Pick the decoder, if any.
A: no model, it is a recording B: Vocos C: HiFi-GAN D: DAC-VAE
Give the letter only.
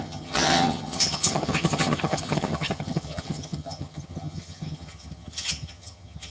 C